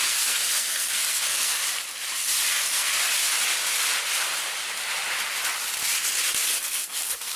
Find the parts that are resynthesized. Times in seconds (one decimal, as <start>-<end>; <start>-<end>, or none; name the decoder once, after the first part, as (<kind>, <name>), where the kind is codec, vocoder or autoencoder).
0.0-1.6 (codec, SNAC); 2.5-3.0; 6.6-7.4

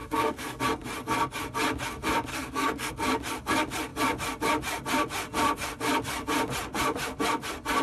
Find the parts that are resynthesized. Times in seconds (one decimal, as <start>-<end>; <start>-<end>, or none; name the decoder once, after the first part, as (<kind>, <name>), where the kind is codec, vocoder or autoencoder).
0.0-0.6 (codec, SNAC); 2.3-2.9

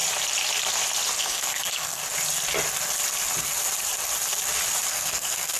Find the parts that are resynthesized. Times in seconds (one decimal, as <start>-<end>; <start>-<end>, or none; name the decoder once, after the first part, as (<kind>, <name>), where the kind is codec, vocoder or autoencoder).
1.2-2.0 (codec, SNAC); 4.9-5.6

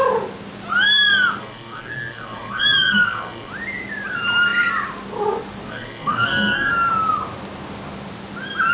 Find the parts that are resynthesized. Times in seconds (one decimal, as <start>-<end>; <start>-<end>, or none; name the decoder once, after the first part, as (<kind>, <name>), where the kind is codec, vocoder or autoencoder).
1.4-3.5 (codec, SNAC); 5.7-6.7

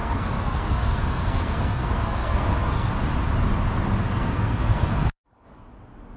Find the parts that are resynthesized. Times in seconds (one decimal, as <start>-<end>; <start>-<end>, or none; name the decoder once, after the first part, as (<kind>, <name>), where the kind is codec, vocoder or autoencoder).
0.0-2.9 (codec, SNAC); 4.0-5.7

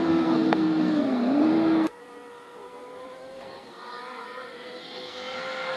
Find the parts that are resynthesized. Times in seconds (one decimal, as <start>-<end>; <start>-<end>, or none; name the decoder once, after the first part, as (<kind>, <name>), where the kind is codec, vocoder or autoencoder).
0.0-5.8 (codec, SNAC)